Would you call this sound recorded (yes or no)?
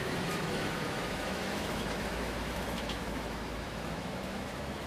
no